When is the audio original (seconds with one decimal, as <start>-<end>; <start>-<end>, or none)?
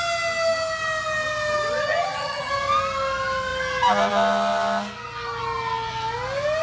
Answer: 0.0-1.8; 2.5-6.6